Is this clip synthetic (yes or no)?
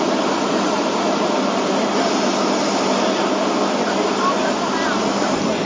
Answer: no